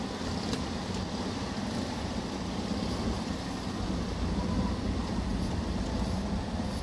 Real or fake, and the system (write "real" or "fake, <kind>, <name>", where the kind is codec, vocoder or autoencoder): real